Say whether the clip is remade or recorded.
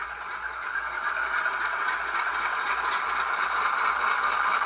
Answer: recorded